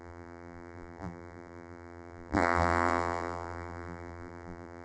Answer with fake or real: fake